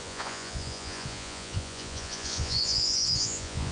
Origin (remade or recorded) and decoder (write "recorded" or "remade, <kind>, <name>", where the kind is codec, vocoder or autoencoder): remade, vocoder, Vocos